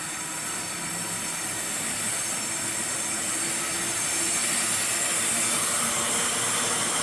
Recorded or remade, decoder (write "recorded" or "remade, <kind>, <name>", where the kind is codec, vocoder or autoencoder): recorded